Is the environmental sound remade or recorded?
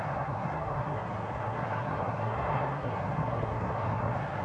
remade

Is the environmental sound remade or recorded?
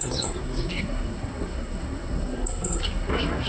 remade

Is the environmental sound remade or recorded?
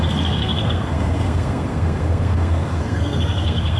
remade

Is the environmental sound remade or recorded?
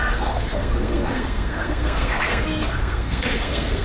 remade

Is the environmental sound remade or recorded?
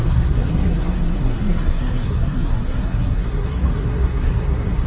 remade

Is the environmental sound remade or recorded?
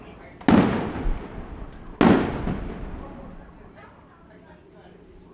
recorded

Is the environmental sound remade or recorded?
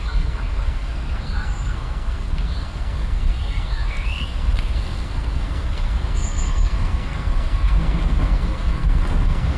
remade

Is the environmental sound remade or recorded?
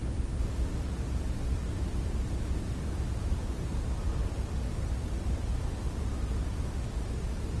recorded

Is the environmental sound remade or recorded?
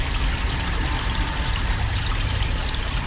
recorded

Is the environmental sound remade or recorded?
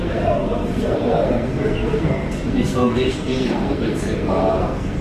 remade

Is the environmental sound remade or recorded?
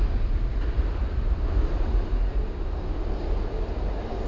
recorded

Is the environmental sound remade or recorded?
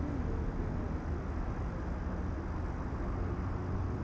recorded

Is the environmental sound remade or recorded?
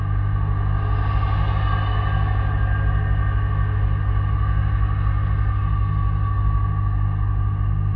recorded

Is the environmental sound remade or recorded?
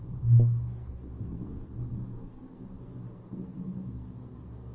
remade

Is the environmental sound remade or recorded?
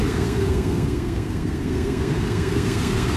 remade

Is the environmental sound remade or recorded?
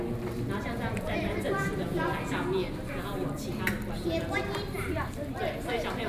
recorded